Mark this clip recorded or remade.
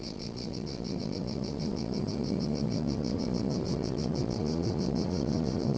remade